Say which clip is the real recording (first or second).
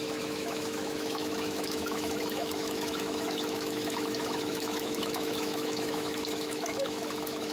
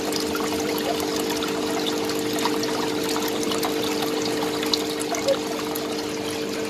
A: second